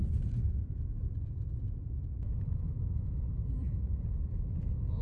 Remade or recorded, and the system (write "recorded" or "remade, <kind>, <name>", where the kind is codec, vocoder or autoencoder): remade, vocoder, Vocos